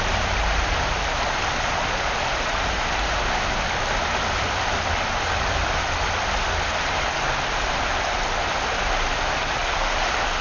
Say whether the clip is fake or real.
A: real